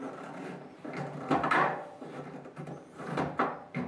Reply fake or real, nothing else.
fake